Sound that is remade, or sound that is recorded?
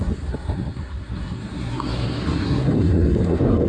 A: remade